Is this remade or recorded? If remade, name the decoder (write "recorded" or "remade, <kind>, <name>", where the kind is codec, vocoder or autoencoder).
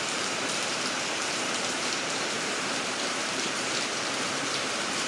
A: remade, vocoder, BigVGAN v2